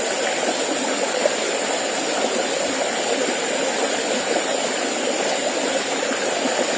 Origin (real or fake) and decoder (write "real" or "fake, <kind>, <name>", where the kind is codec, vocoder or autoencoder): real